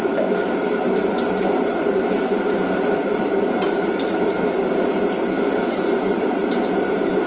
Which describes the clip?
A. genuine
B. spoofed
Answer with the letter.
B